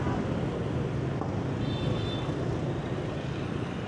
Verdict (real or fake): real